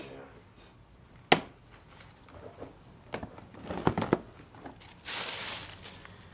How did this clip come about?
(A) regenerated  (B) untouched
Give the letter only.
B